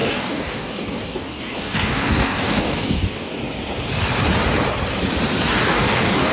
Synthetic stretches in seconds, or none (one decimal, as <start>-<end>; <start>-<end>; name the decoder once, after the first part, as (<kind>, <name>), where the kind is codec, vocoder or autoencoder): 0.0-3.4 (codec, DAC); 5.6-6.3